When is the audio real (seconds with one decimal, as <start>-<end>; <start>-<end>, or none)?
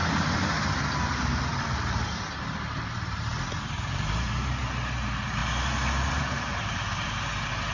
0.0-1.2; 5.4-6.1